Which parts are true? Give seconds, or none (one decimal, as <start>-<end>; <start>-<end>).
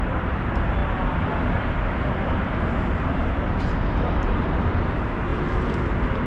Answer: 0.0-6.3